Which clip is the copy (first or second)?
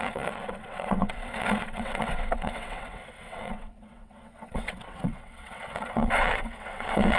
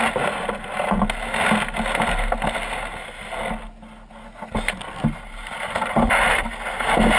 first